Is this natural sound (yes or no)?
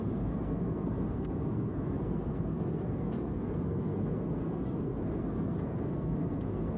no